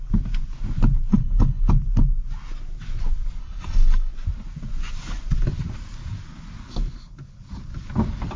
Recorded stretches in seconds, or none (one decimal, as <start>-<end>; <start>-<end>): 0.0-1.1; 1.7-3.4; 4.1-8.4